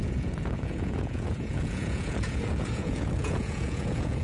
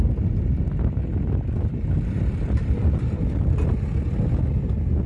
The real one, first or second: second